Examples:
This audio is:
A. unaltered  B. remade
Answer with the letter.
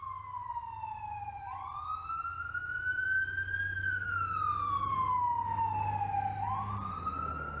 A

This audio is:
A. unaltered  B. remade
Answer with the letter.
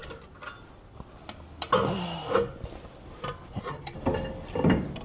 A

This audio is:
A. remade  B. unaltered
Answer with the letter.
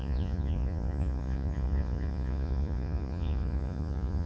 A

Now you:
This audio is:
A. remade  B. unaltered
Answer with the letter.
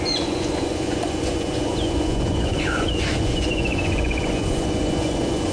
A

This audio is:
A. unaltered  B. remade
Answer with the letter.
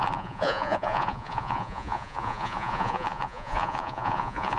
B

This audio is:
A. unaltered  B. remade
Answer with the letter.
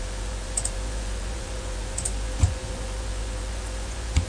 B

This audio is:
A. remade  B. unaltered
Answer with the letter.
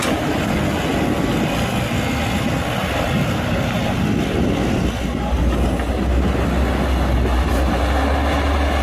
B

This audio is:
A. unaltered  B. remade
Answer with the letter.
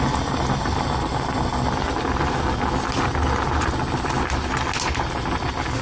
A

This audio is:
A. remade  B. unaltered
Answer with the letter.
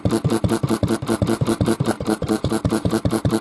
B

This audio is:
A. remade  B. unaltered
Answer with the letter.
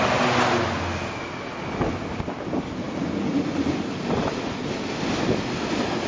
B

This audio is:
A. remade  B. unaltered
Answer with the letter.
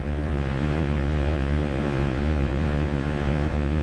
A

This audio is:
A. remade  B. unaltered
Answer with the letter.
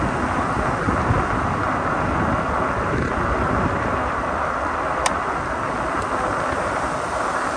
B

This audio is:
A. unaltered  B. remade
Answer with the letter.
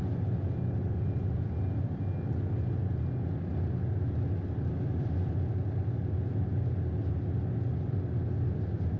A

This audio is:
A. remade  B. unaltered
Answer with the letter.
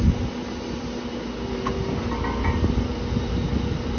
B